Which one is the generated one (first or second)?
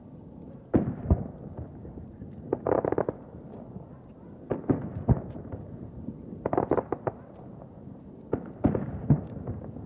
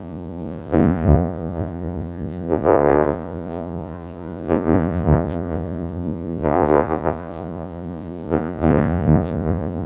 second